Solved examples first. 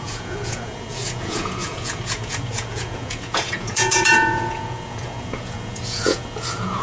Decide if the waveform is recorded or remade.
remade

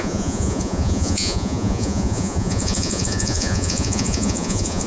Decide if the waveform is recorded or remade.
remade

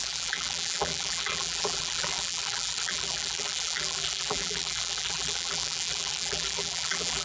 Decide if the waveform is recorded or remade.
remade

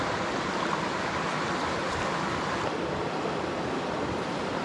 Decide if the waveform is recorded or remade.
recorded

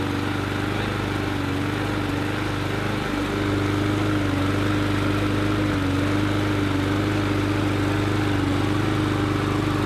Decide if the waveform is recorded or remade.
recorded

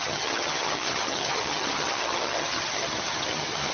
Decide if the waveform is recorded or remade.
remade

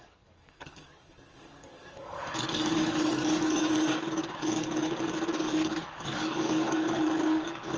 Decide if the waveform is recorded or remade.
remade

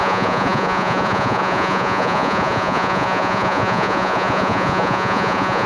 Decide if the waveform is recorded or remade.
remade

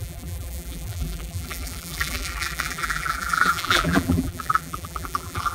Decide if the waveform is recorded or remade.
remade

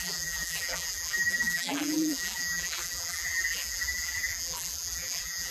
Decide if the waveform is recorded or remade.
remade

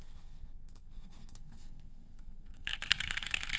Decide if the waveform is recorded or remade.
remade